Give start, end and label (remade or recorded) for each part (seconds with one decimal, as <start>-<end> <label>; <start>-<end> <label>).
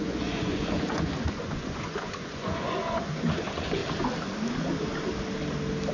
0.0-3.8 remade; 3.8-5.9 recorded